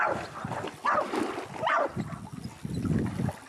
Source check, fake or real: real